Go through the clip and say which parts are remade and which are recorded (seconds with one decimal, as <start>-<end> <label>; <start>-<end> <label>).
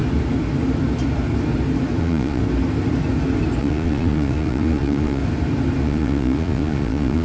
0.0-2.0 recorded; 2.0-2.4 remade; 2.4-3.6 recorded; 3.6-5.2 remade; 5.2-5.8 recorded; 5.8-7.2 remade